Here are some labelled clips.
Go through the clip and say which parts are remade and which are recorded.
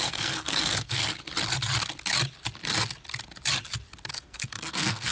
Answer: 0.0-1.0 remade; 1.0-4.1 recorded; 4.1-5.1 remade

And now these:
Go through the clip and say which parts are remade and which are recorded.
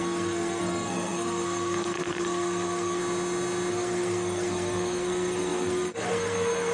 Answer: 0.0-3.0 remade; 3.0-3.7 recorded; 3.7-6.7 remade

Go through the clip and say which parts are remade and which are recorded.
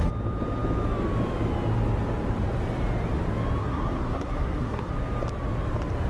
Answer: 0.0-3.6 recorded; 3.6-4.9 remade; 4.9-6.1 recorded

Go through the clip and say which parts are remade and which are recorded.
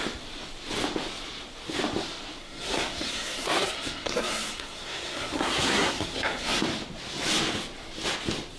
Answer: 0.0-2.4 recorded; 2.4-6.6 remade; 6.6-8.6 recorded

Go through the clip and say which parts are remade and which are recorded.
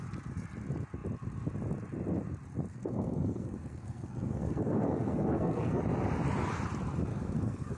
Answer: 0.0-2.7 recorded; 2.7-5.8 remade; 5.8-7.1 recorded; 7.1-7.8 remade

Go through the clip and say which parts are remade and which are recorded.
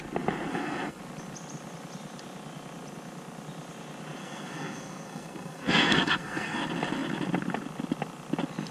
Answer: 0.0-0.5 recorded; 0.5-1.0 remade; 1.0-4.2 recorded; 4.2-6.6 remade; 6.6-8.7 recorded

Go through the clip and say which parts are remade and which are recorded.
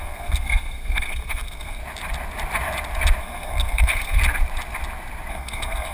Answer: 0.0-1.8 remade; 1.8-3.2 recorded; 3.2-4.2 remade; 4.2-5.3 recorded; 5.3-5.9 remade